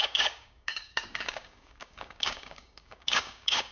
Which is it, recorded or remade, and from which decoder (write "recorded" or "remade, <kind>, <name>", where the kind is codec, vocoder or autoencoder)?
remade, codec, DAC